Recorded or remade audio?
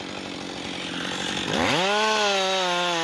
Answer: recorded